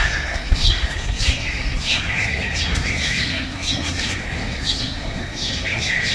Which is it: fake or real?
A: fake